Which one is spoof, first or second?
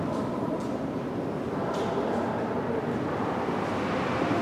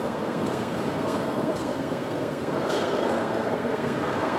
second